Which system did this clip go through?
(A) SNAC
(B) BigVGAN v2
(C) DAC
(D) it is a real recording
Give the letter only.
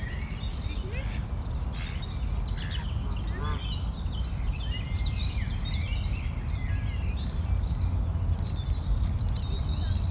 D